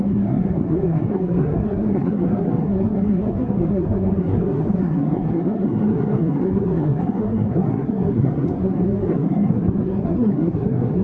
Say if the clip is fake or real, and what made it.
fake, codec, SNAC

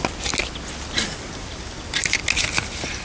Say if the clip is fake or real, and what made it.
real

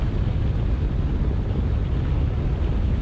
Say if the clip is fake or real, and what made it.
real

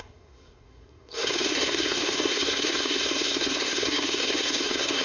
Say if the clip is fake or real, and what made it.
fake, codec, SNAC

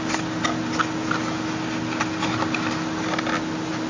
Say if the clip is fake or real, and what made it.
real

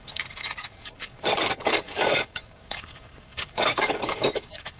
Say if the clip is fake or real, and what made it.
fake, codec, DAC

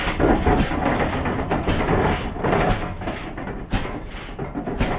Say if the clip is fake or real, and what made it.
real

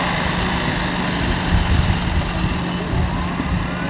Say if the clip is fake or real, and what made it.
real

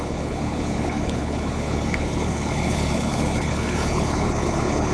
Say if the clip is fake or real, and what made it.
fake, codec, HILCodec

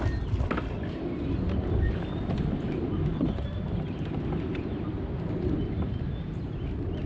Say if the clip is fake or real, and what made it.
real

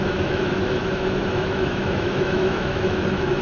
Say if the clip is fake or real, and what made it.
fake, autoencoder, DAC-VAE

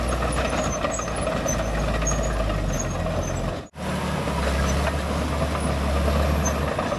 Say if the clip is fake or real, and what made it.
real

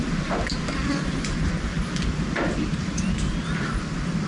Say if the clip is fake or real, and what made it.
fake, vocoder, BigVGAN v2